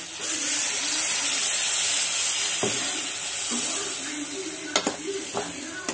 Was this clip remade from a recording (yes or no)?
no